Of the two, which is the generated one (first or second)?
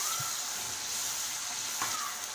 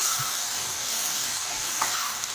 second